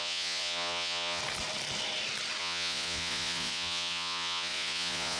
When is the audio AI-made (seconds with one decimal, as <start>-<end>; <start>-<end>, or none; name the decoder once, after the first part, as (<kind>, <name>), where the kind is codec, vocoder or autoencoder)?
0.0-1.2 (vocoder, Vocos); 2.4-5.2